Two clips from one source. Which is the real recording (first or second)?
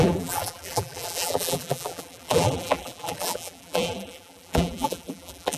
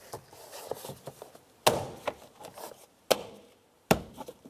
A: second